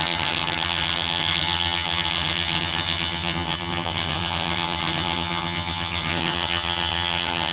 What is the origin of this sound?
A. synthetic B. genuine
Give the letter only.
A